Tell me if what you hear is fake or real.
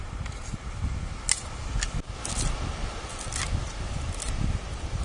real